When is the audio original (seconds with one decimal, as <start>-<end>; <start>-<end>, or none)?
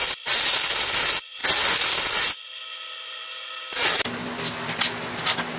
0.0-5.6